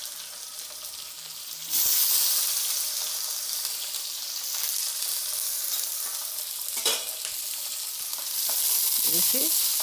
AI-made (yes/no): no